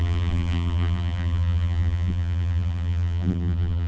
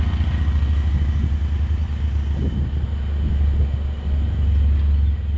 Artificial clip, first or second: first